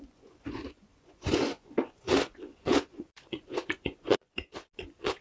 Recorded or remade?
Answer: remade